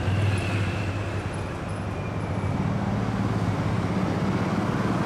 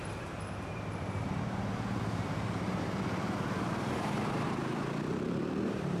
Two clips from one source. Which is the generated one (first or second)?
second